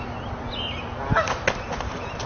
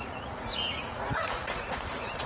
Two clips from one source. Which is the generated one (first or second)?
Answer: second